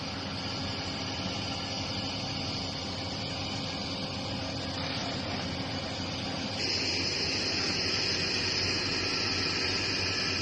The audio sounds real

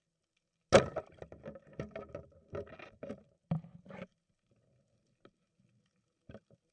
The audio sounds real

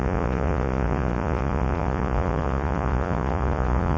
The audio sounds fake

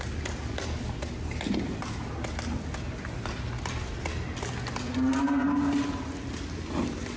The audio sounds real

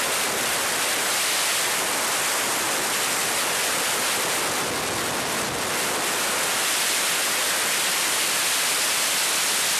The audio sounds real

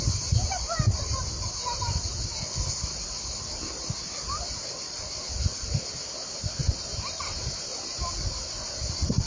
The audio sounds real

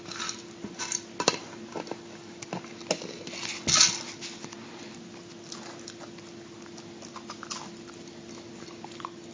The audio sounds real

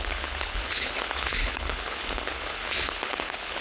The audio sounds fake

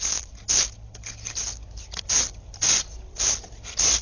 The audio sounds real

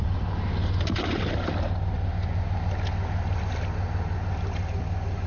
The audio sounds real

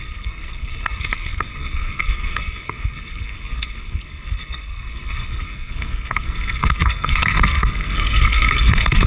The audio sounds fake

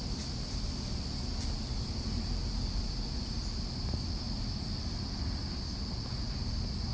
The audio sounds real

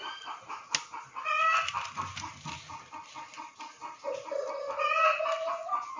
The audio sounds real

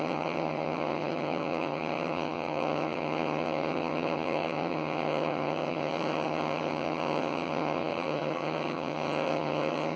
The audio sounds fake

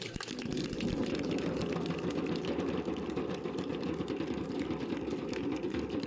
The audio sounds real